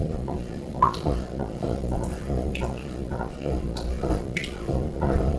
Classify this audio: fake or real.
fake